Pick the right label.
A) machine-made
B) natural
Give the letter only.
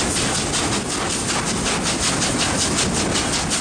B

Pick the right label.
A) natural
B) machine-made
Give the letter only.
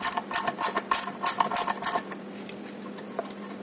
A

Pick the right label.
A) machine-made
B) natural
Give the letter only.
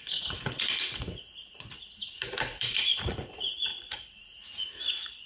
A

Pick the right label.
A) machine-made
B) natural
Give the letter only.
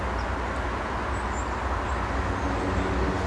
B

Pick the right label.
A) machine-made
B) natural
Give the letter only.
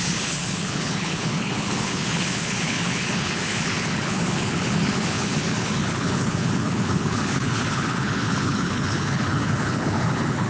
A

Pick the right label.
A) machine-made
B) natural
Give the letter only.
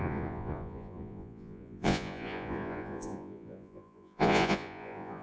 A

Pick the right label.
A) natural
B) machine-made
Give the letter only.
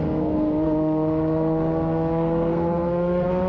B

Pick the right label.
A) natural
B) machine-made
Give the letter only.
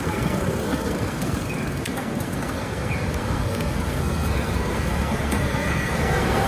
B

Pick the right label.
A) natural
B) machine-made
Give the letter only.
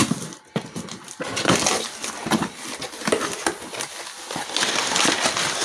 A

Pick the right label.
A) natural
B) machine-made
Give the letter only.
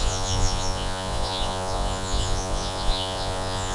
B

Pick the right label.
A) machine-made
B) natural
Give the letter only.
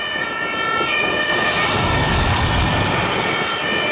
B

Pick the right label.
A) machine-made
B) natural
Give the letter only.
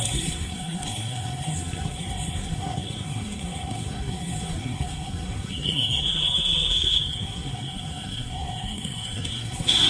A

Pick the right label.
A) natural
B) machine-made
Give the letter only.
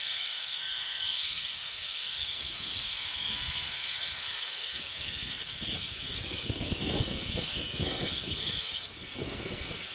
B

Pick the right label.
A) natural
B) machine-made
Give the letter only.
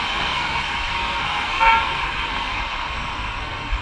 B